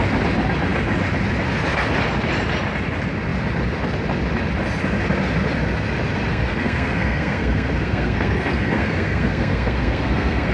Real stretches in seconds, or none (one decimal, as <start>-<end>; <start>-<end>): 0.0-6.3